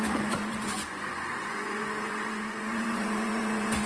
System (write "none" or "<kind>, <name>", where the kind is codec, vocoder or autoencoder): vocoder, Vocos